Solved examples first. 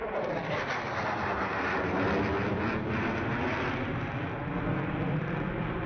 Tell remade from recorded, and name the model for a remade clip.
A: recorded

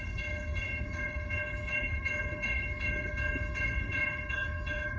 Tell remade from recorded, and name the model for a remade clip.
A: remade, codec, HILCodec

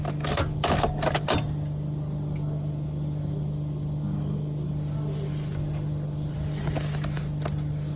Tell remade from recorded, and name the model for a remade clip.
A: recorded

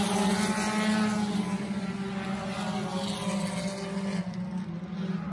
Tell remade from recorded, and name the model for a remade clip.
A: recorded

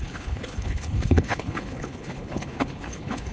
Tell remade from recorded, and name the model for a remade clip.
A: remade, codec, HILCodec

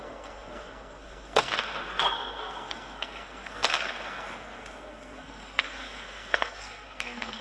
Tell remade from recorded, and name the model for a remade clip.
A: remade, codec, SNAC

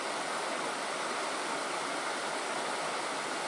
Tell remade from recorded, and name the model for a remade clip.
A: recorded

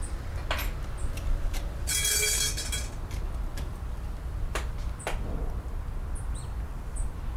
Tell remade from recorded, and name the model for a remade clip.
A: recorded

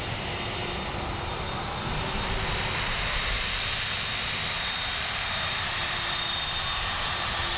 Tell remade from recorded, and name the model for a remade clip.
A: remade, vocoder, BigVGAN v2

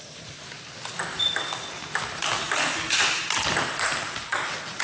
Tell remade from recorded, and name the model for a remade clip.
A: recorded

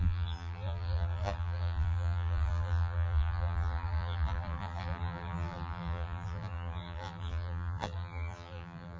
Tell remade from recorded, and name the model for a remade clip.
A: remade, vocoder, BigVGAN v2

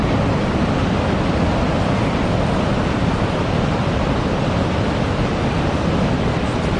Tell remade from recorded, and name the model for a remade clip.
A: recorded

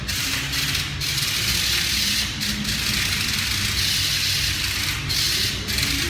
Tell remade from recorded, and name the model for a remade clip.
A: recorded